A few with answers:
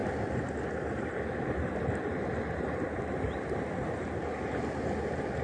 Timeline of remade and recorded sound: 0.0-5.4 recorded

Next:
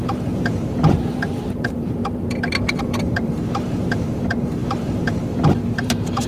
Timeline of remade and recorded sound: 0.0-2.0 remade; 2.0-2.8 recorded; 2.8-6.3 remade

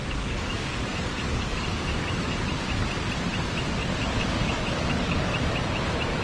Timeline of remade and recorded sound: 0.0-2.4 remade; 2.4-3.8 recorded; 3.8-5.5 remade; 5.5-6.2 recorded

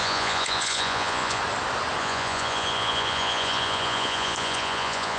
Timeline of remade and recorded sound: 0.0-1.4 remade; 1.4-2.0 recorded; 2.0-5.2 remade